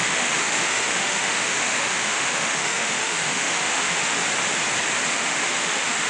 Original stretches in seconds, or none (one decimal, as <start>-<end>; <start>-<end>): 4.2-5.1